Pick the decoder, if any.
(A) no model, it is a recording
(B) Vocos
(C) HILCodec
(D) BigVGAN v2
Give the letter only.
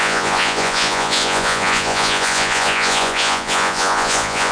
B